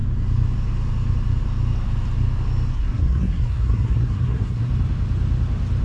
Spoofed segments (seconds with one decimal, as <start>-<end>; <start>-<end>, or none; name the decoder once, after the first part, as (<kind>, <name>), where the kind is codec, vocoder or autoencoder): 2.7-4.7 (codec, SNAC)